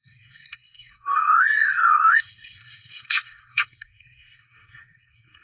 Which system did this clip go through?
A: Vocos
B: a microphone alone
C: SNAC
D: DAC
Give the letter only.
C